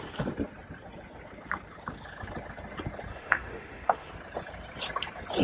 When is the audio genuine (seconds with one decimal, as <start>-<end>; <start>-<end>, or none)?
0.0-3.1; 4.1-5.4

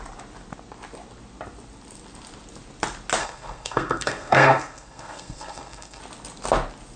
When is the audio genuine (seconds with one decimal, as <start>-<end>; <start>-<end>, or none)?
0.0-3.2; 6.0-7.0

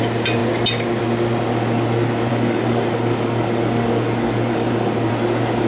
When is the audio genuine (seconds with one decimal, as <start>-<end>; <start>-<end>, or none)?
0.0-2.3; 5.1-5.7